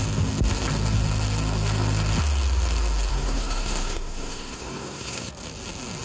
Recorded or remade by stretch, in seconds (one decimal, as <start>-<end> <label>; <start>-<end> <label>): 0.0-3.1 recorded; 3.1-5.3 remade; 5.3-6.0 recorded